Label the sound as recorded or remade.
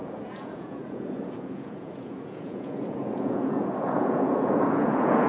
remade